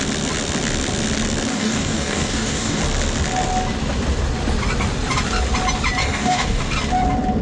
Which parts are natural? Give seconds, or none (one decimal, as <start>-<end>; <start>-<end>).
0.0-1.5; 2.8-6.0; 6.6-7.4